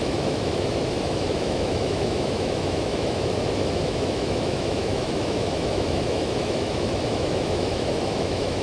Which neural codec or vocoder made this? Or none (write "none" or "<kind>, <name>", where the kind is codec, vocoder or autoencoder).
autoencoder, DAC-VAE